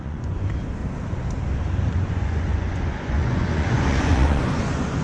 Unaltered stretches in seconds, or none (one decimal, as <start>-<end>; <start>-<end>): 0.8-1.9